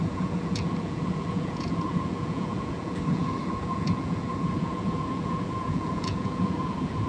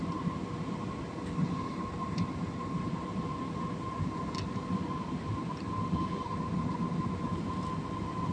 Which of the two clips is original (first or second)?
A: second